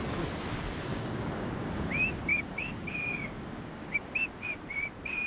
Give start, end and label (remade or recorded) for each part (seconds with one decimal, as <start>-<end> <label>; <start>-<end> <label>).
0.0-0.9 recorded; 0.9-1.5 remade; 1.5-2.3 recorded; 2.3-3.8 remade; 3.8-5.3 recorded